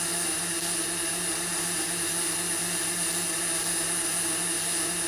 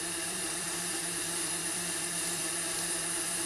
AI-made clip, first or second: second